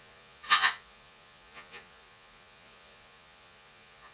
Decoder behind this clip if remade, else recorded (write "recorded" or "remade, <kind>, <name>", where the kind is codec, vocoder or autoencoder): remade, vocoder, Vocos